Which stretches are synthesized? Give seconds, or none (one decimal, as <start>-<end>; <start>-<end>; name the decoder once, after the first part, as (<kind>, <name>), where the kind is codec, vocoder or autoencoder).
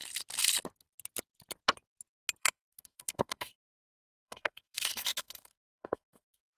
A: 2.4-6.6 (codec, SNAC)